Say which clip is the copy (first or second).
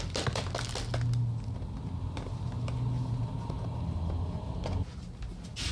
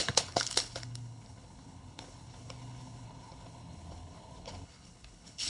second